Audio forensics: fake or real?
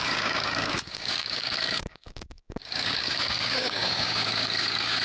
fake